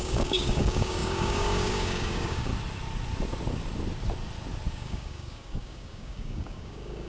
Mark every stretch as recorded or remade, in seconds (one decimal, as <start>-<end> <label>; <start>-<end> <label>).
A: 0.0-2.5 remade; 2.5-4.7 recorded; 4.7-7.1 remade

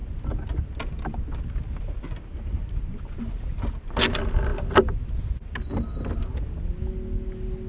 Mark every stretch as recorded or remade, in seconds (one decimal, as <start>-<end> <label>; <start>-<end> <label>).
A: 0.0-7.7 recorded

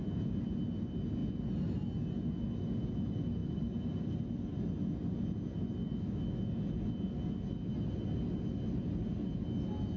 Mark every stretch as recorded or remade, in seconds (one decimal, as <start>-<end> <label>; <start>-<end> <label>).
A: 0.0-10.0 recorded

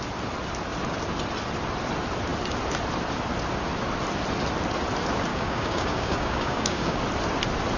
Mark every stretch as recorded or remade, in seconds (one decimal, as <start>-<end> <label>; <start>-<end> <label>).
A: 0.0-5.3 recorded; 5.3-7.0 remade; 7.0-7.8 recorded

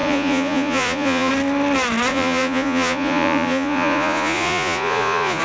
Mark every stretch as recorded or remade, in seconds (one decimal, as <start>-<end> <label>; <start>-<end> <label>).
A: 0.0-1.3 remade; 1.3-2.1 recorded; 2.1-5.4 remade

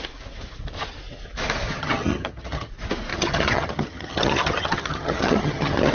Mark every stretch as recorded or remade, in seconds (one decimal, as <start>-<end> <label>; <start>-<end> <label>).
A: 0.0-1.7 recorded; 1.7-2.7 remade; 2.7-3.1 recorded; 3.1-5.9 remade

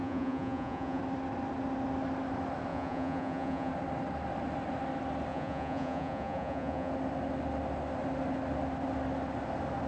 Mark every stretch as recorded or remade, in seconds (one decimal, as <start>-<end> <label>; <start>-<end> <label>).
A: 0.0-1.0 remade; 1.0-2.7 recorded; 2.7-3.7 remade; 3.7-5.3 recorded; 5.3-6.9 remade; 6.9-9.9 recorded

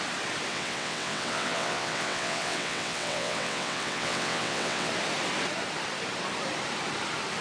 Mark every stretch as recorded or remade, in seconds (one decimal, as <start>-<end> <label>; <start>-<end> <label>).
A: 0.0-0.5 recorded; 0.5-4.9 remade; 4.9-7.4 recorded